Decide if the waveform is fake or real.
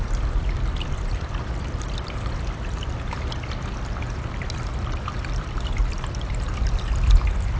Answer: fake